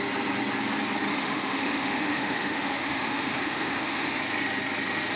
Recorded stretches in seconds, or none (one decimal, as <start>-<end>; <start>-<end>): 0.0-1.1; 4.2-5.2